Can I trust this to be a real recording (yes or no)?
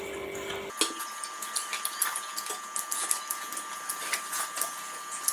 yes